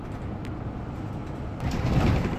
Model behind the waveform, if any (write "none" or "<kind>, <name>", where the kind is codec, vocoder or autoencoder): none